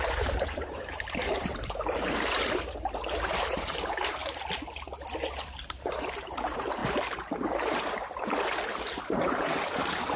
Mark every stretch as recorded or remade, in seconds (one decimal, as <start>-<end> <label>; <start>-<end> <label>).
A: 0.0-4.2 remade; 4.2-5.9 recorded; 5.9-6.8 remade; 6.8-8.6 recorded; 8.6-10.2 remade